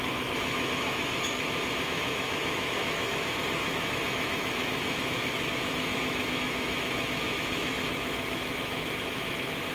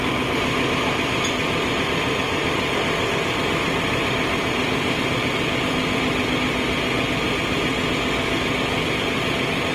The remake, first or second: first